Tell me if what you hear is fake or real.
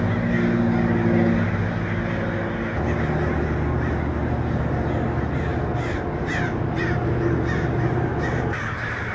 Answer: real